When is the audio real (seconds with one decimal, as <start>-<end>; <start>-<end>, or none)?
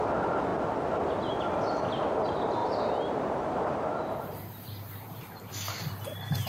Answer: 0.0-2.6; 5.5-6.5